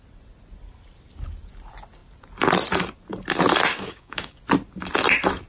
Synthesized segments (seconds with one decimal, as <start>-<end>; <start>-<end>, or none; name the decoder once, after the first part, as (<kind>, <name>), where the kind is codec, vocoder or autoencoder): 3.7-4.4 (codec, DAC)